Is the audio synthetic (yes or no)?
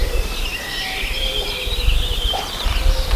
no